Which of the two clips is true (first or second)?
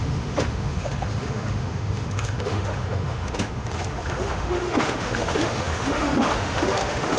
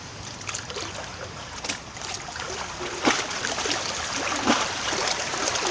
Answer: second